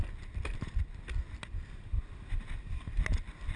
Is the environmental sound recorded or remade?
recorded